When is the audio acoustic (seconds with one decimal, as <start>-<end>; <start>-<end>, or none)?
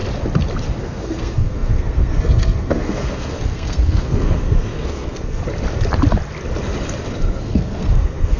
0.0-0.8; 5.4-7.4